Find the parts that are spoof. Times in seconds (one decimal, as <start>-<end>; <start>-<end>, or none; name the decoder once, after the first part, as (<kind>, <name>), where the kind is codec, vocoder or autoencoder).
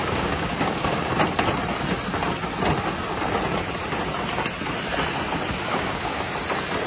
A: 0.0-1.1 (codec, DAC); 5.7-6.3